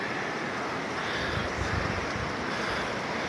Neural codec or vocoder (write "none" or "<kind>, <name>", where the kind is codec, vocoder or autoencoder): none